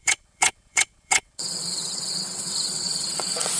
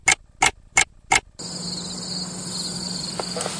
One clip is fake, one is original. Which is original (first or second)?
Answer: second